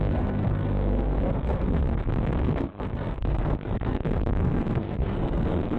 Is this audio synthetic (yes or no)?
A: yes